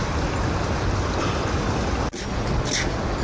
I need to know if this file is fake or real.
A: real